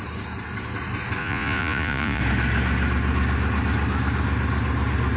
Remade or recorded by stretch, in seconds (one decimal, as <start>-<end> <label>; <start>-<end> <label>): 0.0-1.2 recorded; 1.2-2.2 remade; 2.2-5.2 recorded